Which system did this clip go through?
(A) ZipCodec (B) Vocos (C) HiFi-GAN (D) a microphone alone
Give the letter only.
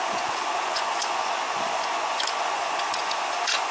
B